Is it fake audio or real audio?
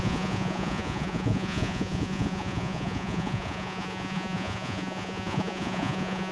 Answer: fake